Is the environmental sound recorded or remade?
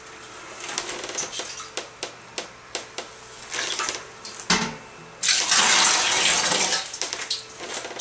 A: recorded